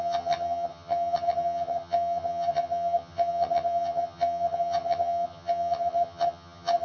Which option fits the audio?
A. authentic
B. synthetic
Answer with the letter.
B